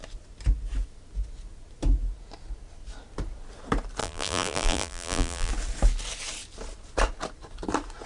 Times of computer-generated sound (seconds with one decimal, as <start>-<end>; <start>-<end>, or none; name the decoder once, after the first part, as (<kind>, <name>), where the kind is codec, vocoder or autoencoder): 4.0-5.5 (vocoder, BigVGAN v2)